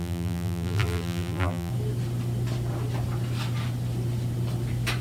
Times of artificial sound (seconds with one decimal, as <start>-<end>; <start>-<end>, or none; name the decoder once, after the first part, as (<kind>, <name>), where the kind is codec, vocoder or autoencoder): 0.0-1.7 (vocoder, BigVGAN v2)